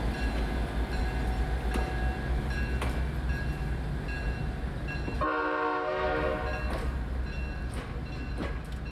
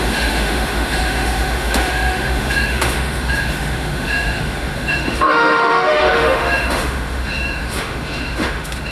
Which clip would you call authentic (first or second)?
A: first